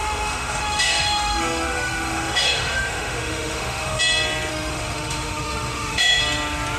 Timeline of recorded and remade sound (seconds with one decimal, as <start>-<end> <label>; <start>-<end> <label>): 0.0-4.0 remade; 4.0-4.5 recorded; 4.5-6.2 remade; 6.2-6.8 recorded